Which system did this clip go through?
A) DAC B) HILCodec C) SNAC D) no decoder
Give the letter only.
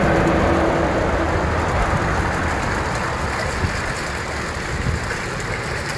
D